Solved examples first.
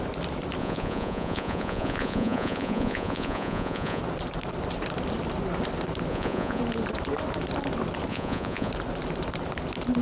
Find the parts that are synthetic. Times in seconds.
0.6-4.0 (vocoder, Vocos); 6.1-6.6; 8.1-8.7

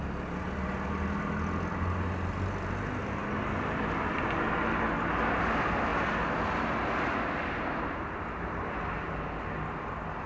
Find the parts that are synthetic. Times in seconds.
none

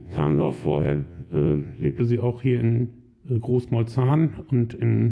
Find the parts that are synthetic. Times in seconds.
0.0-2.0 (vocoder, WaveNeXt)

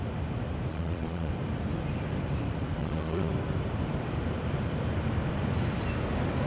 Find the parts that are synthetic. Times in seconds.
0.7-1.3 (vocoder, Vocos); 2.8-3.3

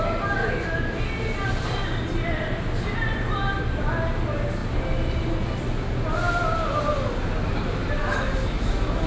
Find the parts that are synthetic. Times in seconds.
0.4-1.0 (autoencoder, DAC-VAE); 8.0-9.1

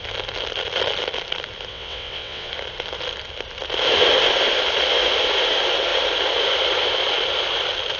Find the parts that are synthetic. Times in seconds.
1.7-2.5 (vocoder, WaveNeXt)

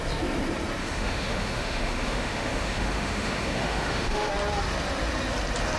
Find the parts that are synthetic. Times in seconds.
0.8-4.3 (autoencoder, DAC-VAE)